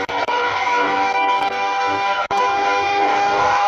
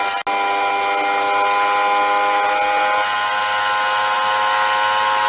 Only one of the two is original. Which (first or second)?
second